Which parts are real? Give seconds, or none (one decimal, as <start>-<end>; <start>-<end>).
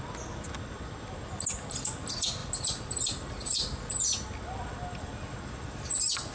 0.0-6.3